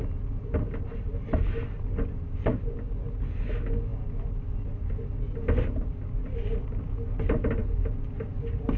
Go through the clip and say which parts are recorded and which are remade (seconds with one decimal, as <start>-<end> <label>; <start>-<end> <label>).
0.0-8.8 recorded